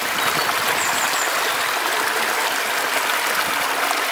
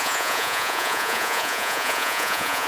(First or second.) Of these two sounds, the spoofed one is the second